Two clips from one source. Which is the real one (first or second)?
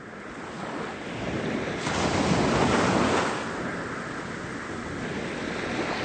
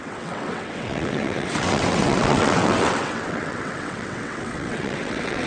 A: first